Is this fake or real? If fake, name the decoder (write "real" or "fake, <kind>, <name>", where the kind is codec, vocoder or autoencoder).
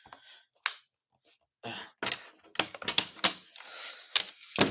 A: real